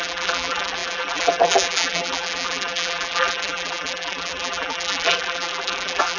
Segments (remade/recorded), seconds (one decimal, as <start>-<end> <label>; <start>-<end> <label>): 0.0-6.2 remade